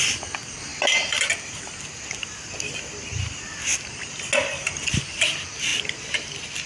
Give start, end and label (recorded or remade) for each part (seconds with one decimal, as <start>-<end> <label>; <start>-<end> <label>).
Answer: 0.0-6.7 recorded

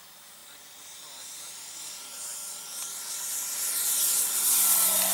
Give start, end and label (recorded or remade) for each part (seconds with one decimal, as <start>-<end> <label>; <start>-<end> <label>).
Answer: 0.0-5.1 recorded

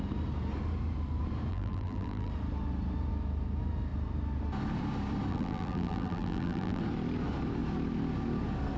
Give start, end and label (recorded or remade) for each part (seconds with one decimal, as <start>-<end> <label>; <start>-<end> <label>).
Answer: 0.0-1.5 recorded; 1.5-2.3 remade; 2.3-5.3 recorded; 5.3-6.8 remade; 6.8-8.8 recorded